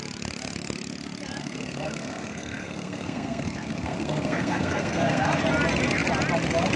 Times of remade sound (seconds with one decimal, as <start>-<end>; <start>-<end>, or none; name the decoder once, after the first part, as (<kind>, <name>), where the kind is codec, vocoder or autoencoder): 1.4-5.4 (codec, SNAC)